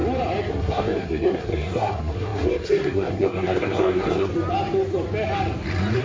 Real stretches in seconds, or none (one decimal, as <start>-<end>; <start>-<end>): 0.0-0.5; 4.3-6.0